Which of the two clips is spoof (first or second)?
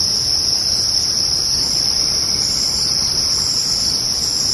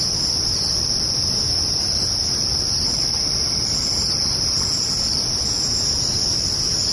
first